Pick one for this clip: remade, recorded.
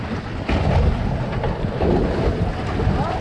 recorded